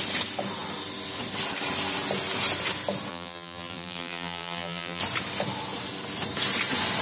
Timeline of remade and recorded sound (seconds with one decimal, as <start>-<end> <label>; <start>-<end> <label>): 0.0-3.1 recorded; 3.1-5.0 remade; 5.0-7.0 recorded